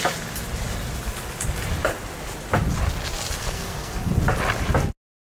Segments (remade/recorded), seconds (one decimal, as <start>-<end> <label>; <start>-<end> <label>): 0.0-3.4 recorded; 3.4-4.1 remade; 4.1-5.3 recorded